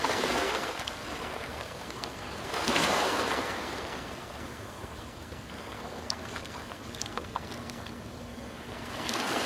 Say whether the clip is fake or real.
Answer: fake